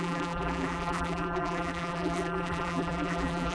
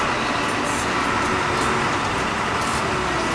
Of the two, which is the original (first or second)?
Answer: second